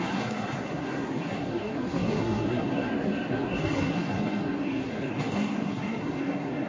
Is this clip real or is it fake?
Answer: fake